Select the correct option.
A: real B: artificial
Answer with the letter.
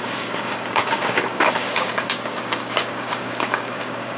B